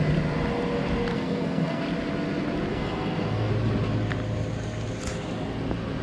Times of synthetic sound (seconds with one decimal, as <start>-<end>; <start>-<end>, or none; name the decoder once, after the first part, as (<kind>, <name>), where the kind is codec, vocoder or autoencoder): 1.1-1.8 (codec, SNAC); 2.7-3.5